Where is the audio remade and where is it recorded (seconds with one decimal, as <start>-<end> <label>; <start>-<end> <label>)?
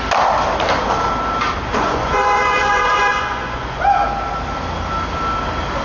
0.0-1.7 recorded; 1.7-3.8 remade; 3.8-5.8 recorded